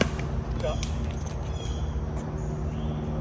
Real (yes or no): yes